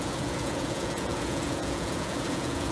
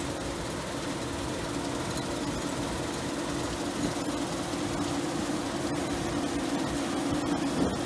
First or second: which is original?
second